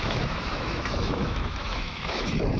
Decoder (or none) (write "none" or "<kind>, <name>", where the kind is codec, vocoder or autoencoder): autoencoder, DAC-VAE